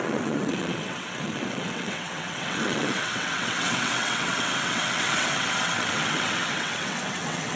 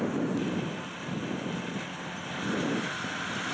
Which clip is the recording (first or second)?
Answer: second